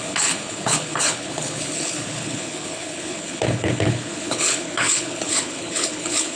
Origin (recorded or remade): remade